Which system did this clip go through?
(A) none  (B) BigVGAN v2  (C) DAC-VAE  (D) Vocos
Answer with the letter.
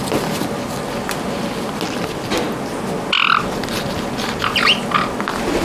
A